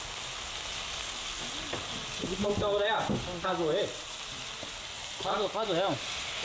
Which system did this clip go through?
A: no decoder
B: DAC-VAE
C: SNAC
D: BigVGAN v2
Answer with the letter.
A